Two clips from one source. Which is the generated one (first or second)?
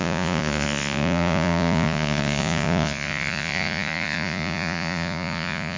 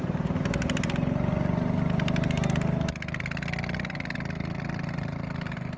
first